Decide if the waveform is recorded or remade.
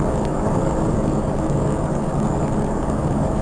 remade